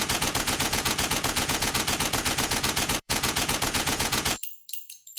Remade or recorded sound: remade